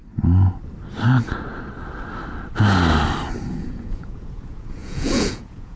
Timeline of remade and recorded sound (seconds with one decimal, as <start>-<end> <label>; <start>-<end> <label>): 0.0-3.5 recorded; 3.5-5.8 remade